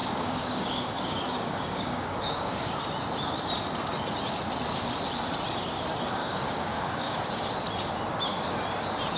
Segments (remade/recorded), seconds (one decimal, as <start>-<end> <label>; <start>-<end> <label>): 0.0-2.7 remade; 2.7-6.2 recorded; 6.2-7.2 remade; 7.2-9.2 recorded